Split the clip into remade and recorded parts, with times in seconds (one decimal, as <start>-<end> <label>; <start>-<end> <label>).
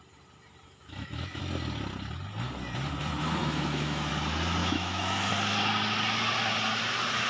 0.0-0.8 recorded; 0.8-1.4 remade; 1.4-3.4 recorded; 3.4-4.1 remade; 4.1-4.6 recorded; 4.6-5.3 remade; 5.3-7.3 recorded